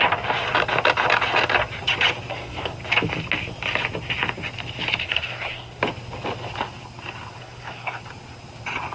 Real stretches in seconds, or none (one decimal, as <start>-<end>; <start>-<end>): 0.0-2.3; 2.8-5.0; 5.8-7.4; 8.0-8.9